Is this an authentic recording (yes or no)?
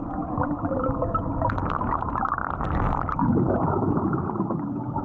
yes